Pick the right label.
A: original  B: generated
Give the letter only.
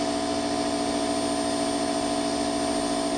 A